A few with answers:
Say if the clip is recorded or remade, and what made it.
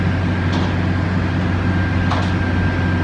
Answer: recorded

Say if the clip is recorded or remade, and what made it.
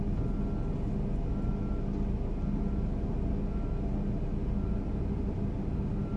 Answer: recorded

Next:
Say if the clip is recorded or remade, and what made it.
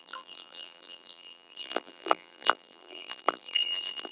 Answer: remade, vocoder, BigVGAN v2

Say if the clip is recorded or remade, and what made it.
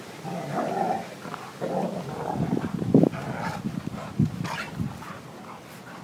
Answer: recorded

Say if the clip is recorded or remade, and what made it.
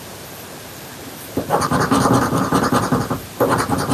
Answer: recorded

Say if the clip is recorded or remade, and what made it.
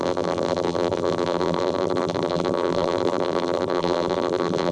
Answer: remade, vocoder, BigVGAN v2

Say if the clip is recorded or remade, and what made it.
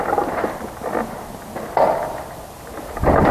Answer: remade, vocoder, BigVGAN v2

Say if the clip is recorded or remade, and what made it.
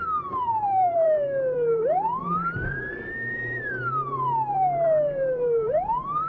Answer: remade, vocoder, BigVGAN v2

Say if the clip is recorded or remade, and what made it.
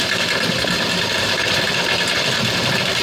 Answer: remade, vocoder, BigVGAN v2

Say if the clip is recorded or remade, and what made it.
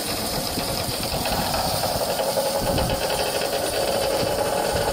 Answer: remade, vocoder, BigVGAN v2